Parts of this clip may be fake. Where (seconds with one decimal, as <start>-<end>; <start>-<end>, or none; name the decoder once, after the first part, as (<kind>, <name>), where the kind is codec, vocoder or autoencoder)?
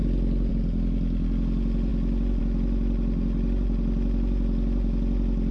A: none